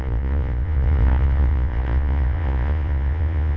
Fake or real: fake